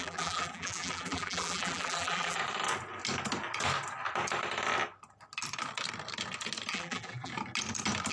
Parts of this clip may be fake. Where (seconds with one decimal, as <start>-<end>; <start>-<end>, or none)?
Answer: 0.0-2.4; 6.7-7.3